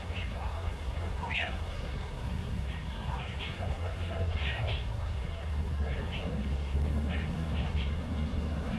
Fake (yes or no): yes